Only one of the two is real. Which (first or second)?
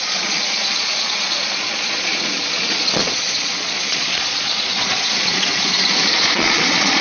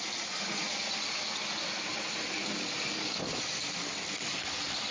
second